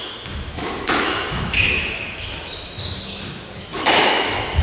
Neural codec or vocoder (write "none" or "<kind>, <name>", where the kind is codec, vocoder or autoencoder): autoencoder, DAC-VAE